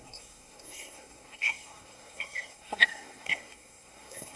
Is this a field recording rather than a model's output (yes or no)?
no